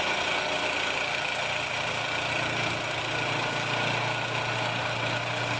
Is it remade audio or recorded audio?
recorded